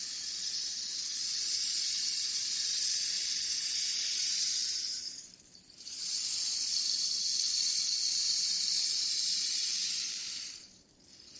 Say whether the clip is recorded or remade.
remade